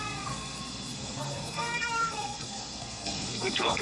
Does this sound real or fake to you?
fake